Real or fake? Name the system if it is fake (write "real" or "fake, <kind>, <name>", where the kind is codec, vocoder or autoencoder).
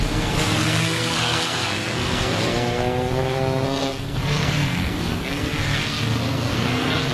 fake, codec, SNAC